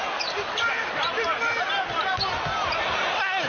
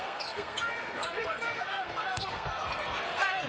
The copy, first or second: second